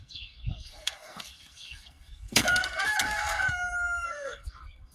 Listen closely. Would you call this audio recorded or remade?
remade